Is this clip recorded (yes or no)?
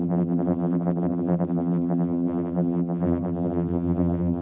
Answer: no